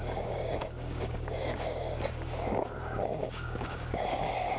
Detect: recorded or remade remade